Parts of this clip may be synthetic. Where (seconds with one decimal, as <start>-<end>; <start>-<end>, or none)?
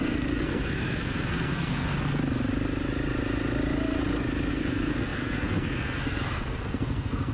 0.0-1.9; 4.5-7.3